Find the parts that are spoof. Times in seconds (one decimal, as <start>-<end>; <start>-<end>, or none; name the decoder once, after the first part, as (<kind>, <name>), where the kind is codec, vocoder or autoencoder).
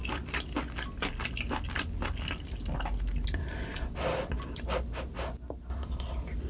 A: none